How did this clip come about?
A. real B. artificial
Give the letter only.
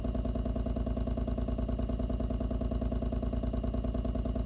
A